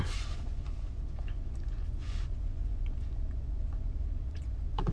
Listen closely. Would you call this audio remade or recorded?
remade